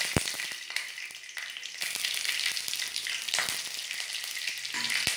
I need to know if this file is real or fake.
real